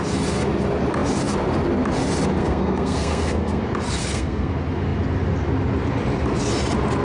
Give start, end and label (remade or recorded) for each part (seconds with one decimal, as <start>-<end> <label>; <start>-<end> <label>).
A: 0.0-2.4 recorded; 2.4-3.6 remade; 3.6-4.0 recorded; 4.0-4.5 remade; 4.5-7.0 recorded